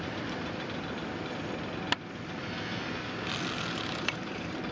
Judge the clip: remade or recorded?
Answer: recorded